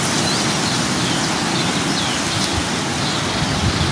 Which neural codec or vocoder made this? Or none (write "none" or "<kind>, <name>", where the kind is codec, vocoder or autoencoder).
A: none